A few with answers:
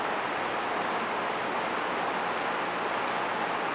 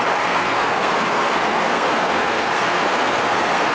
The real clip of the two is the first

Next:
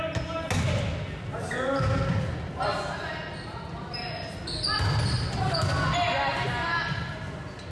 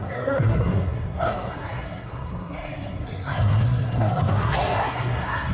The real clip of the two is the first